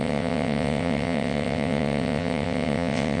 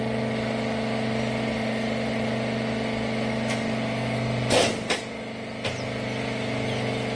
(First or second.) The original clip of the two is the second